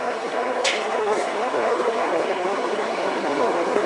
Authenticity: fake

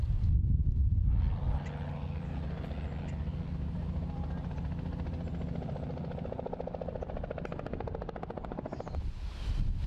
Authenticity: real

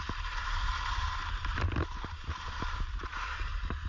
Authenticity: real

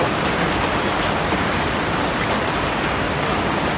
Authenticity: fake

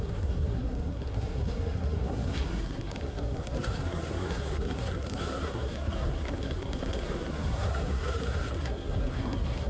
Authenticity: fake